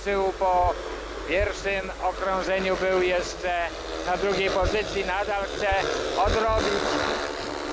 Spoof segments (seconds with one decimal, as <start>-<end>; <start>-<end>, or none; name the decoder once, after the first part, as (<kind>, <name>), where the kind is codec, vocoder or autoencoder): none